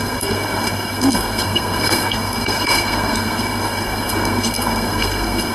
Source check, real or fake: fake